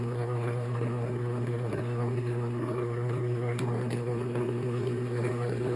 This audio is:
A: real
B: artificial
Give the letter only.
B